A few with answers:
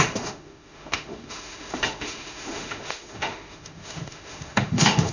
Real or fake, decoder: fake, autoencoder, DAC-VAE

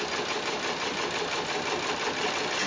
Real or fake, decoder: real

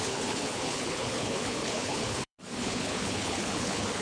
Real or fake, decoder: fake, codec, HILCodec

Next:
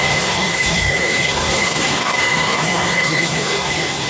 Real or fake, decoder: fake, codec, SNAC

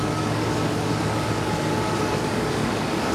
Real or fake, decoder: fake, codec, DAC